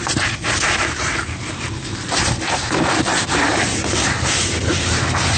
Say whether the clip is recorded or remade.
recorded